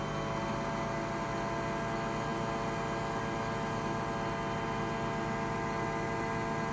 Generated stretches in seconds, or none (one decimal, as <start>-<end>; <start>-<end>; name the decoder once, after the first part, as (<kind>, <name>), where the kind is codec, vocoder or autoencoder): none